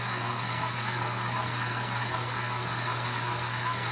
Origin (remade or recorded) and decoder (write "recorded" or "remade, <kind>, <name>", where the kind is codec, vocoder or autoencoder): remade, codec, SNAC